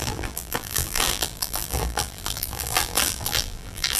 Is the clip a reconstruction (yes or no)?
yes